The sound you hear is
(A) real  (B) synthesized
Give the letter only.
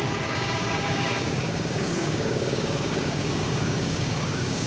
B